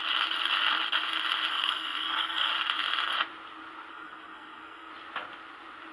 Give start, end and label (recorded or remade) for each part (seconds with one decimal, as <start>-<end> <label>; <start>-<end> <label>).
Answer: 0.0-1.5 recorded; 1.5-2.5 remade; 2.5-3.9 recorded; 3.9-4.9 remade; 4.9-5.9 recorded